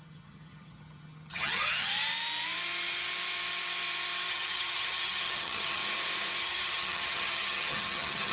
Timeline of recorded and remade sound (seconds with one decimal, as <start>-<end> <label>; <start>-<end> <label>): 0.0-1.9 remade; 1.9-4.3 recorded; 4.3-5.8 remade; 5.8-6.4 recorded; 6.4-8.3 remade

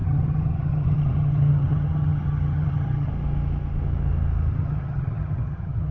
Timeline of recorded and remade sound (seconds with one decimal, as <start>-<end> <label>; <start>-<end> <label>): 0.0-3.1 remade; 3.1-4.5 recorded; 4.5-5.9 remade

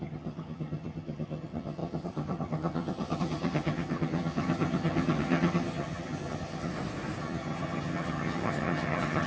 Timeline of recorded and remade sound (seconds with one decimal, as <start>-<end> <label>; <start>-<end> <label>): 0.0-6.7 remade; 6.7-7.2 recorded; 7.2-9.3 remade

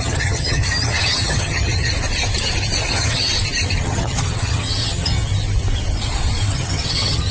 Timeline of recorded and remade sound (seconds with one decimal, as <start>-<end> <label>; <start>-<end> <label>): 0.0-1.9 remade; 1.9-2.9 recorded; 2.9-3.3 remade; 3.3-3.8 recorded; 3.8-5.2 remade; 5.2-6.5 recorded; 6.5-7.3 remade

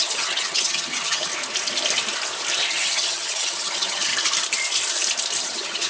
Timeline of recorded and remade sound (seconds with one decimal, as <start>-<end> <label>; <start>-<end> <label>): 0.0-1.3 remade; 1.3-2.7 recorded; 2.7-4.1 remade; 4.1-5.4 recorded; 5.4-5.9 remade

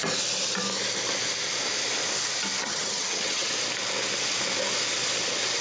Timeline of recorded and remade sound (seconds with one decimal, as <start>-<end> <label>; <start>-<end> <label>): 0.0-2.6 recorded; 2.6-3.5 remade; 3.5-5.6 recorded